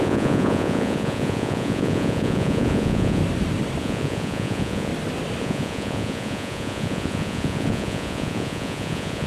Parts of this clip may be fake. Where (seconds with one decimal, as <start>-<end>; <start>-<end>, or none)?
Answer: 0.0-3.2; 3.8-4.9; 5.4-9.3